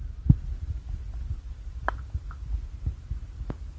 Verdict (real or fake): real